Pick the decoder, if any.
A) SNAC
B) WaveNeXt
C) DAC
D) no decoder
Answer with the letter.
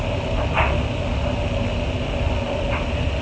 D